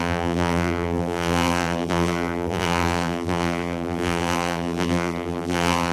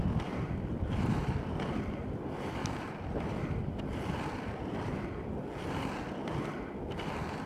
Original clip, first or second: second